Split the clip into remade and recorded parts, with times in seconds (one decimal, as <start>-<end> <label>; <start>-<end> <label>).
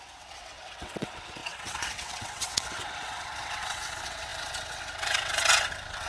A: 0.0-6.1 remade